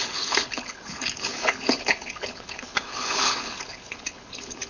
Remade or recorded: remade